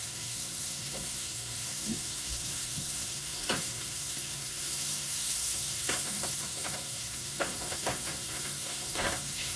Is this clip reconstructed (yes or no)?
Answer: yes